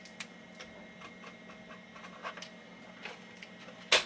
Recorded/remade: recorded